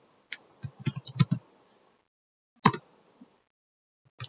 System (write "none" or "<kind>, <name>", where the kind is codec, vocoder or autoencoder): none